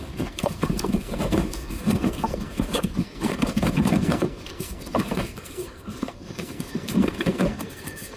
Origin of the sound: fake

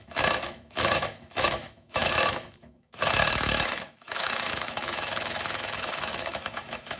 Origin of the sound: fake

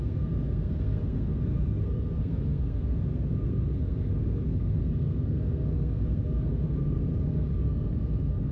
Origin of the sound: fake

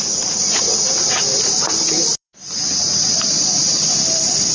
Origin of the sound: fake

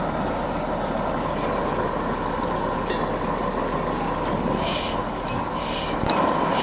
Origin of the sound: real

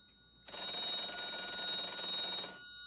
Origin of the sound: real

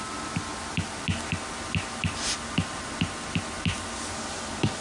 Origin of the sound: real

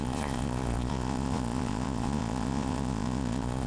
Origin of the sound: fake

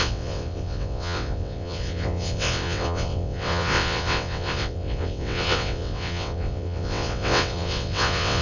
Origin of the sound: fake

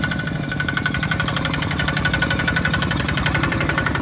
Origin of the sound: fake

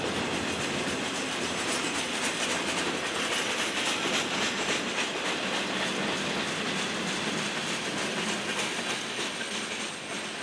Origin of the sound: real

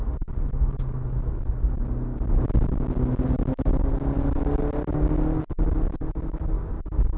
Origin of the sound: real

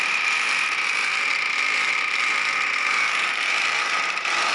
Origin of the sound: fake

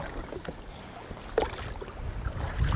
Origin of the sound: real